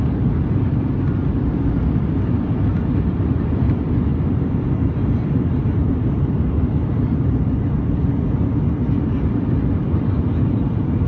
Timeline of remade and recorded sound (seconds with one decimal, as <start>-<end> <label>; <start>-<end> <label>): 0.0-11.1 recorded